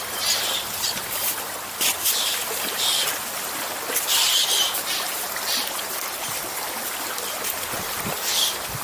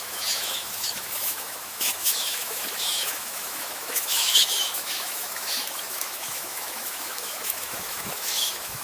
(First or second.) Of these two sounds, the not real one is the second